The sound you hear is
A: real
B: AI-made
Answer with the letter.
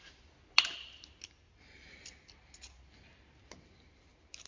A